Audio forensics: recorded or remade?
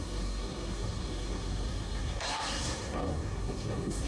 remade